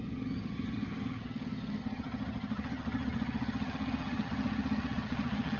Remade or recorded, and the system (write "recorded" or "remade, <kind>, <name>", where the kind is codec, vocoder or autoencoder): remade, vocoder, HiFi-GAN